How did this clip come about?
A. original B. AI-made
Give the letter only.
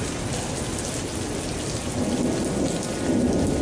A